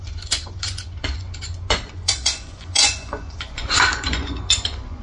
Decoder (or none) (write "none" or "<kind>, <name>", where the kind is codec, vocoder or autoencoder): vocoder, Vocos